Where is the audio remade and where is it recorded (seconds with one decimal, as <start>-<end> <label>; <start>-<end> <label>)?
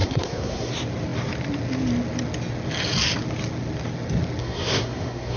0.0-0.7 remade; 0.7-4.4 recorded; 4.4-5.4 remade